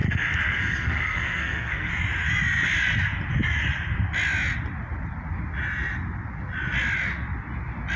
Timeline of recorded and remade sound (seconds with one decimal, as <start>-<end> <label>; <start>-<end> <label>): 0.0-1.9 remade; 1.9-8.0 recorded